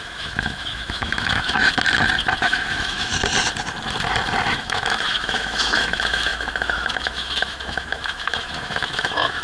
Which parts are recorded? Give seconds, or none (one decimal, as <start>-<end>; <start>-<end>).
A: 1.7-2.4; 3.1-4.5